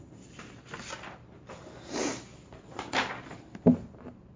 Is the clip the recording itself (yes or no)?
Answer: yes